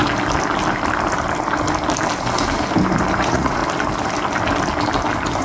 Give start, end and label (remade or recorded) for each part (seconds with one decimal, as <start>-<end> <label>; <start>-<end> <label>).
0.0-3.2 recorded; 3.2-3.6 remade; 3.6-5.4 recorded